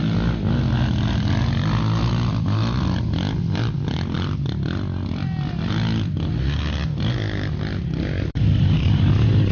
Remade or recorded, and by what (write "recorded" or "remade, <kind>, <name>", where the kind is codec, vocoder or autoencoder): recorded